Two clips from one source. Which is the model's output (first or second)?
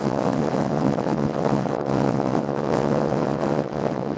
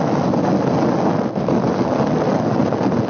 first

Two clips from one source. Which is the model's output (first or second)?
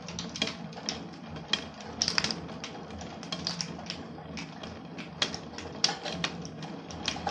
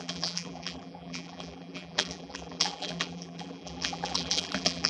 second